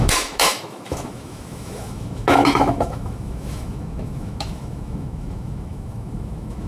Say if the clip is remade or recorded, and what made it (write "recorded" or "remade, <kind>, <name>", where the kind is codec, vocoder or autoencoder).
remade, autoencoder, DAC-VAE